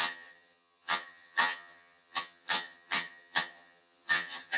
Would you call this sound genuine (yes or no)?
no